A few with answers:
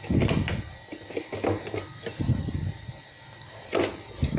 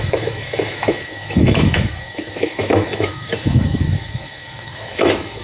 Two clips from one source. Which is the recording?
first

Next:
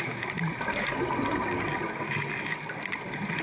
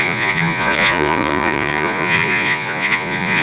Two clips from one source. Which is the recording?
first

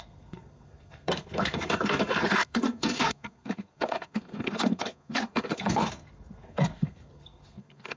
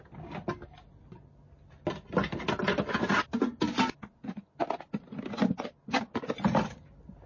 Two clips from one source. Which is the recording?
second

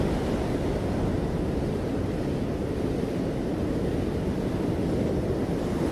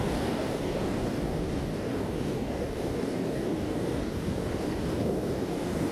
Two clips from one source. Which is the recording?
first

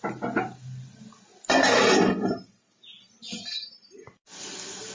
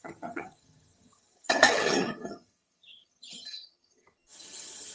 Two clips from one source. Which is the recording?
first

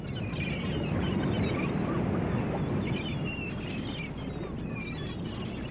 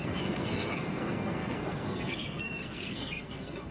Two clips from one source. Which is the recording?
first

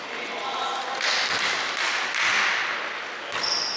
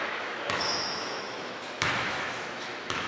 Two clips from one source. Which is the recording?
first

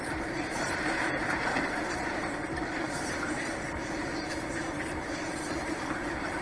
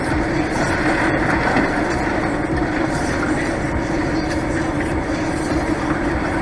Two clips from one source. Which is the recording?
second